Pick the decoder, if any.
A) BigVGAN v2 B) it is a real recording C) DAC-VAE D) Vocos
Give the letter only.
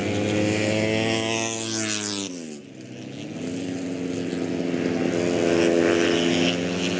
B